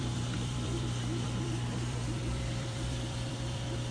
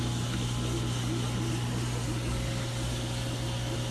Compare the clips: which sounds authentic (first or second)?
second